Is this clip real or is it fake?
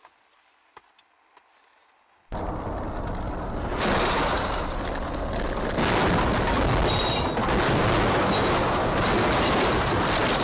real